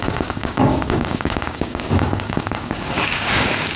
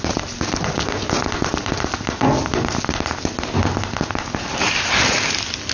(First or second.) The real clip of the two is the second